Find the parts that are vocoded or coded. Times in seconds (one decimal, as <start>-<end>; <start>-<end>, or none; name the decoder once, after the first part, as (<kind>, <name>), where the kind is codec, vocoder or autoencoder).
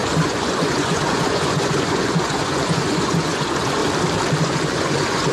0.0-3.8 (vocoder, Vocos); 4.4-5.3